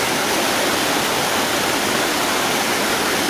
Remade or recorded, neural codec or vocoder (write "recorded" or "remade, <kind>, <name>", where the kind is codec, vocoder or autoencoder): recorded